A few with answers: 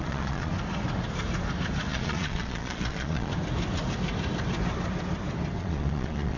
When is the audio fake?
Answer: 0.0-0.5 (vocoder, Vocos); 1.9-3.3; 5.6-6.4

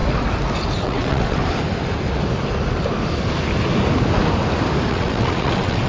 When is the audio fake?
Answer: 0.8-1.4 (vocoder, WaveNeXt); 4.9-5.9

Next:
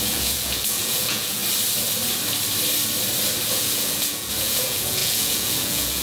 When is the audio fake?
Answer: 0.0-1.4 (vocoder, Vocos); 3.5-6.0

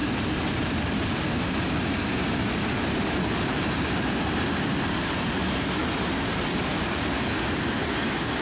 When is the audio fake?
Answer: 2.0-8.4 (vocoder, BigVGAN v2)

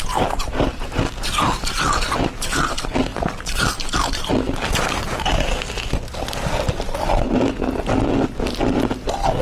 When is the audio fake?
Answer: none

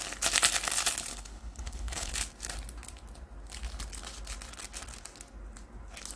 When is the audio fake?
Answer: 1.1-2.1 (codec, HILCodec)